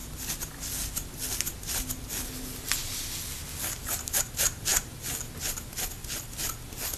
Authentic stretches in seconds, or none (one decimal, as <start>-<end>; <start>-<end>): 0.0-7.0

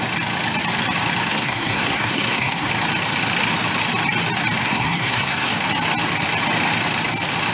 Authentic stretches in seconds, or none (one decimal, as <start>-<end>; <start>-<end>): 0.0-1.3; 2.7-4.6; 5.5-7.5

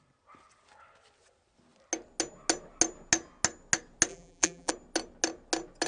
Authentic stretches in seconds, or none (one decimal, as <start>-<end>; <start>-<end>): 0.0-4.1; 4.7-5.9